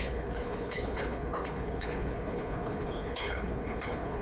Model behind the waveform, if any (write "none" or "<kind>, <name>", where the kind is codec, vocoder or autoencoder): codec, HILCodec